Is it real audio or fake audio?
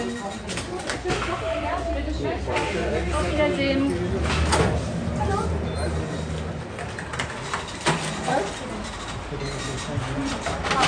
real